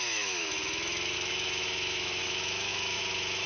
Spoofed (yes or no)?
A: yes